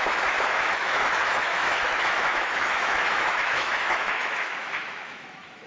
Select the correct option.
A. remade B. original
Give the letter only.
A